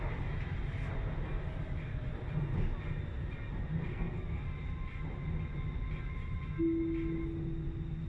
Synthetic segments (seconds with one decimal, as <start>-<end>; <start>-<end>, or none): 3.9-4.4